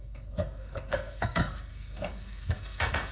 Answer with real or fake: fake